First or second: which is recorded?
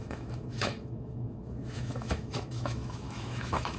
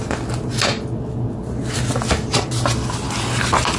second